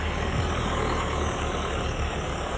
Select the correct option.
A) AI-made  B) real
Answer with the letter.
A